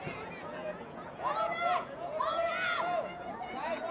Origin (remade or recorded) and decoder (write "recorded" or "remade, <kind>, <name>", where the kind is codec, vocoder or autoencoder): remade, vocoder, Vocos